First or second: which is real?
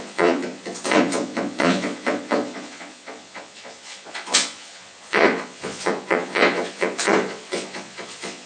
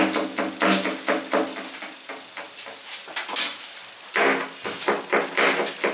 second